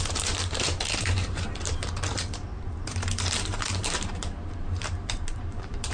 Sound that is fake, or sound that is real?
fake